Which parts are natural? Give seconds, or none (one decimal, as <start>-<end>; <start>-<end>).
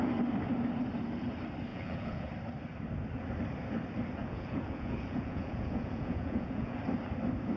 0.0-1.7; 2.3-4.2; 6.8-7.6